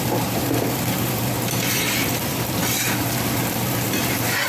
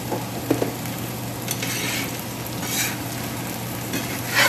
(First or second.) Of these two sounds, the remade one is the first